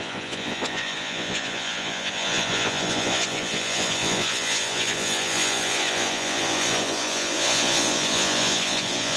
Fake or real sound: fake